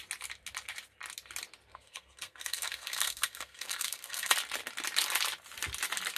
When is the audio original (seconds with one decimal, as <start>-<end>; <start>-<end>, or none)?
0.0-1.7; 4.3-6.2